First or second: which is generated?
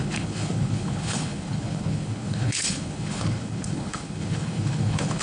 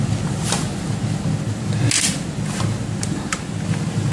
first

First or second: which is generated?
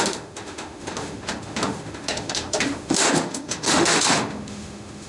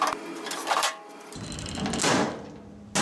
first